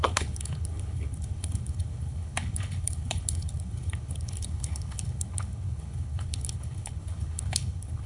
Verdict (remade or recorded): remade